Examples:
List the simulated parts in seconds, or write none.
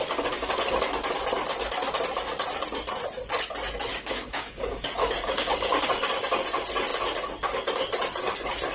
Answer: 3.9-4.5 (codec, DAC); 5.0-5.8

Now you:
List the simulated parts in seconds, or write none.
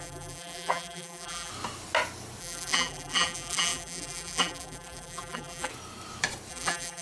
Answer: 0.0-1.5 (vocoder, BigVGAN v2); 2.4-5.7; 6.5-7.0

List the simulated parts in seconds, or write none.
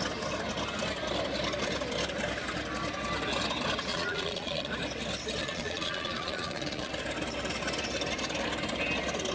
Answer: 3.9-4.7 (vocoder, Vocos); 5.4-6.9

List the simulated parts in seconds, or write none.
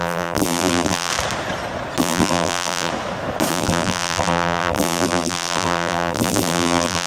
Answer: 0.0-1.1 (vocoder, BigVGAN v2); 2.0-2.9; 3.5-7.1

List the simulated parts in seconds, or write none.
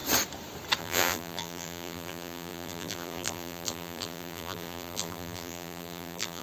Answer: 0.8-6.4 (vocoder, BigVGAN v2)